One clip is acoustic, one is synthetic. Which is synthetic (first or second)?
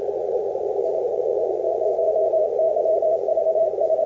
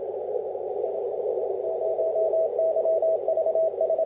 first